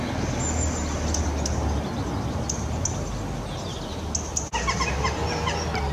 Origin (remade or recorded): recorded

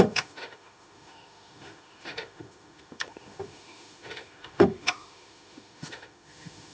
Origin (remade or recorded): remade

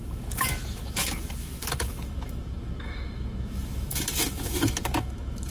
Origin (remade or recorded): remade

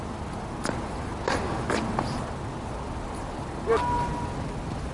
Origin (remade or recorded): recorded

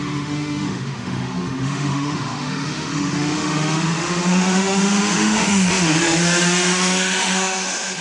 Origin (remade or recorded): remade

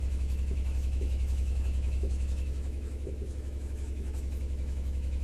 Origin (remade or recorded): remade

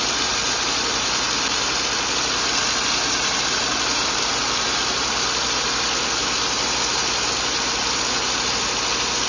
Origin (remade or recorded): recorded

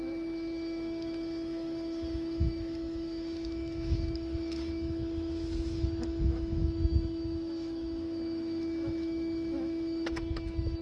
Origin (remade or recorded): remade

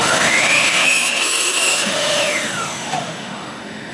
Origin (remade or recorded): remade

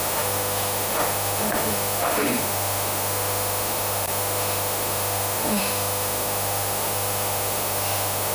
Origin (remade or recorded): remade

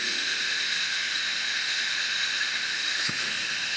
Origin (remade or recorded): remade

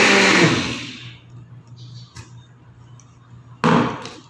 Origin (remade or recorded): recorded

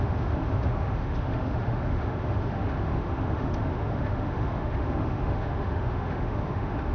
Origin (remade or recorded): remade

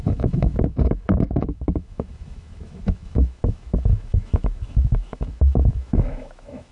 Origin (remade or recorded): remade